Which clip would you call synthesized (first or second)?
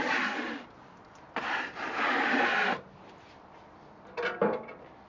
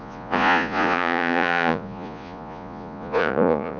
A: second